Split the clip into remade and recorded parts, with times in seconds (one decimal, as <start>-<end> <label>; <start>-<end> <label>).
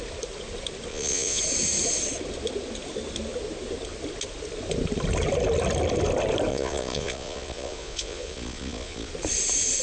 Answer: 0.0-0.9 recorded; 0.9-1.4 remade; 1.4-6.5 recorded; 6.5-9.1 remade; 9.1-9.8 recorded